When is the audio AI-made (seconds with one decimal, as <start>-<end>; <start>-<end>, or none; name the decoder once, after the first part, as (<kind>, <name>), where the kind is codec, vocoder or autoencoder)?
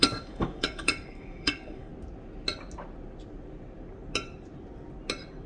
0.0-1.9 (codec, DAC)